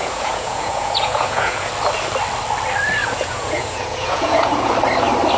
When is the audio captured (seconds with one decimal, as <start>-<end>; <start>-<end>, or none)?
1.7-3.0; 4.7-5.4